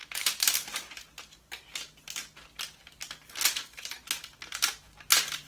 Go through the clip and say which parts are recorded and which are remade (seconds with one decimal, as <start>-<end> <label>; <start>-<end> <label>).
0.0-5.5 recorded

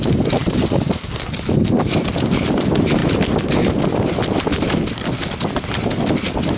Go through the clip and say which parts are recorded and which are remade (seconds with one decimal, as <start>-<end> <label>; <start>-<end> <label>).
0.0-0.4 remade; 0.4-1.7 recorded; 1.7-3.0 remade; 3.0-4.1 recorded; 4.1-6.6 remade

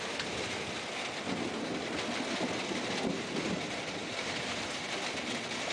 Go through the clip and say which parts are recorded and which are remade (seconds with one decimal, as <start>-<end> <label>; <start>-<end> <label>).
0.0-5.7 recorded

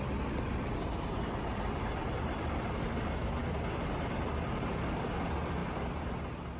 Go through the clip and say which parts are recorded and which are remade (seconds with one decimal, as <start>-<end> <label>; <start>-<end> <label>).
0.0-1.9 recorded; 1.9-2.6 remade; 2.6-3.4 recorded; 3.4-3.9 remade; 3.9-5.6 recorded; 5.6-6.1 remade; 6.1-6.6 recorded

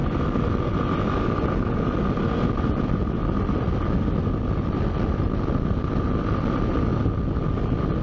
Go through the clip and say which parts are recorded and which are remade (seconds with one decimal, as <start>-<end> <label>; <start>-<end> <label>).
0.0-8.0 recorded

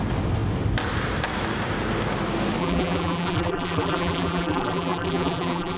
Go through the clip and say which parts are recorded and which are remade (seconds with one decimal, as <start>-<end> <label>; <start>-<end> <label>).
0.0-2.6 recorded; 2.6-5.8 remade

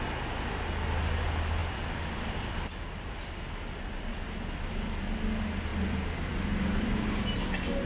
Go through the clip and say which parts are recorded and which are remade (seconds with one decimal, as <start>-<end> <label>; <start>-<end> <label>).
0.0-1.6 recorded; 1.6-2.5 remade; 2.5-7.9 recorded